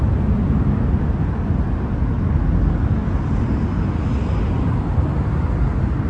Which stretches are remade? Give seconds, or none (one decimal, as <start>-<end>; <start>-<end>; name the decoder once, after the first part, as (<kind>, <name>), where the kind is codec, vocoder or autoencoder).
none